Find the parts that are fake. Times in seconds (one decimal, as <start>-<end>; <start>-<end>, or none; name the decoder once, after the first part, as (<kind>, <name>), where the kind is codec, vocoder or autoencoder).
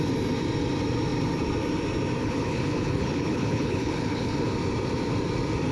2.2-4.5 (codec, HILCodec)